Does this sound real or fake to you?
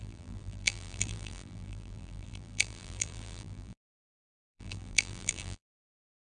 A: fake